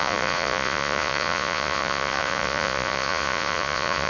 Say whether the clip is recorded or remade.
remade